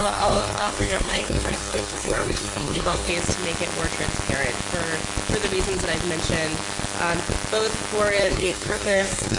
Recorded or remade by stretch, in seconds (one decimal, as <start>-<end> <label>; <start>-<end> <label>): 0.0-3.1 remade; 3.1-8.2 recorded; 8.2-9.4 remade